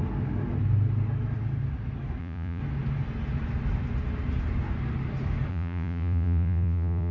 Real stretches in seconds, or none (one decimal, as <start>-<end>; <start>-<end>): 0.0-2.2; 2.6-5.5